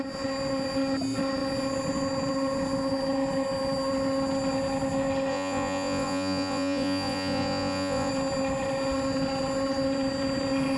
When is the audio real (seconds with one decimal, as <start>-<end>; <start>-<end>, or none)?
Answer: 0.0-5.3; 8.1-10.8